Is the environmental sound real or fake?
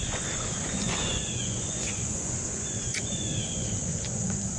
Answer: fake